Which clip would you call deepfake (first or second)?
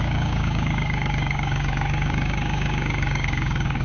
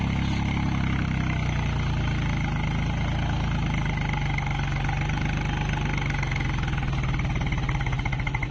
first